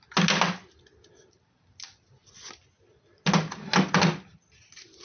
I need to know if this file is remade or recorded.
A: recorded